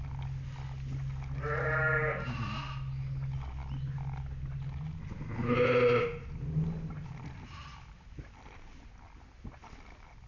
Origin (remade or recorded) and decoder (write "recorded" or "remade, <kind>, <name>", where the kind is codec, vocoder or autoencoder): recorded